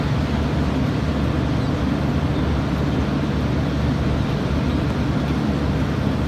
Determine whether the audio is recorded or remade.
recorded